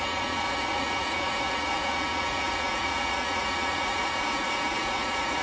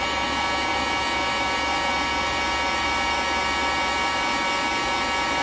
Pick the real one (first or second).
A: second